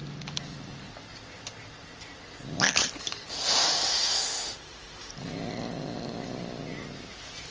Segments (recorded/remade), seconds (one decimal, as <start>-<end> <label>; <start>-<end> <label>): 0.0-3.9 recorded; 3.9-5.1 remade; 5.1-7.5 recorded